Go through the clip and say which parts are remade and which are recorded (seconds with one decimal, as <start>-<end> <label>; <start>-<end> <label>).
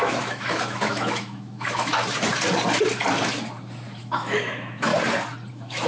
0.0-1.9 remade; 1.9-4.0 recorded; 4.0-4.9 remade; 4.9-5.5 recorded; 5.5-5.9 remade